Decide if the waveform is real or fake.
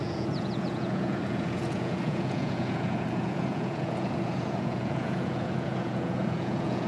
fake